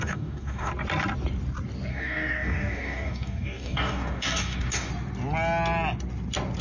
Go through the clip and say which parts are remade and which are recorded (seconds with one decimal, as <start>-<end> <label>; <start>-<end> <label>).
0.0-0.7 remade; 0.7-1.9 recorded; 1.9-4.9 remade; 4.9-6.6 recorded